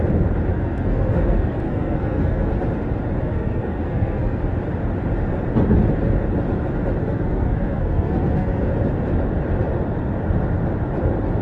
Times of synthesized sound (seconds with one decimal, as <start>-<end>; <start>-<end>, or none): 0.5-2.5; 3.2-4.4; 7.0-8.6